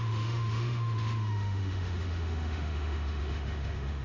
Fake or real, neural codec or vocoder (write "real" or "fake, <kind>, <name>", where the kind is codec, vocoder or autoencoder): fake, autoencoder, DAC-VAE